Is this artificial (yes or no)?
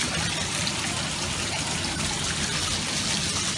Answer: no